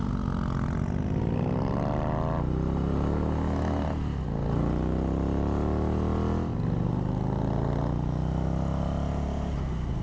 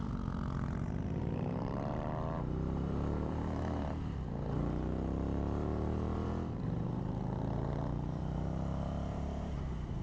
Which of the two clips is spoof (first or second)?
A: second